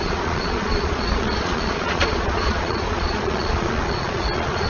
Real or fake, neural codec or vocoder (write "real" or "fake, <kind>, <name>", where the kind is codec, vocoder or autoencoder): fake, vocoder, Vocos